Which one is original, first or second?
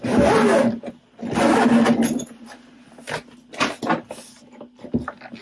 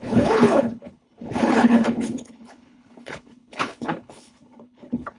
first